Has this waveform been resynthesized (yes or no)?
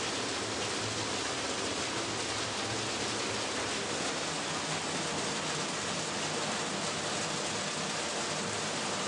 no